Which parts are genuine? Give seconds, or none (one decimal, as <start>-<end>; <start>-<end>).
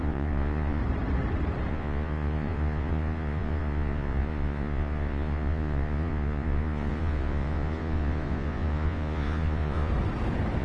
0.8-1.7; 9.9-10.6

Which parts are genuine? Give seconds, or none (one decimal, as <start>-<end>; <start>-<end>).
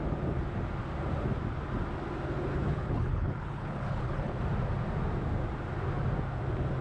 0.0-2.5; 4.4-6.8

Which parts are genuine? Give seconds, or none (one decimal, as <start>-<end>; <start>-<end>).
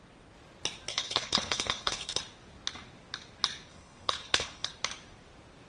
0.0-0.9; 2.2-3.7; 4.7-5.7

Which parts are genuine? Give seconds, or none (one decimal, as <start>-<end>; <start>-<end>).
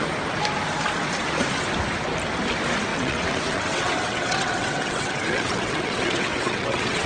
0.0-2.9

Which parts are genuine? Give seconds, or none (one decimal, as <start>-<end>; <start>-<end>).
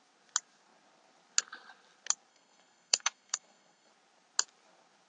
0.0-2.3; 3.9-5.1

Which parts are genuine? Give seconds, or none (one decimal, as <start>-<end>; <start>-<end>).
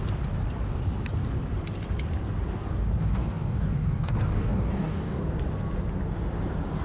0.0-3.0; 5.2-6.8